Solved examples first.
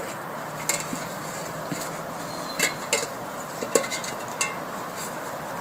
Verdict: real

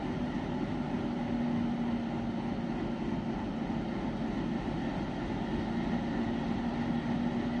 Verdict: real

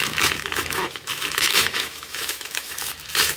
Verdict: fake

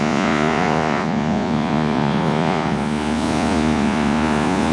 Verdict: fake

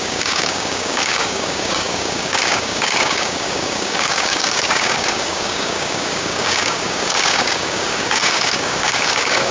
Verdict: fake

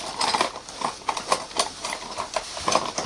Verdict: real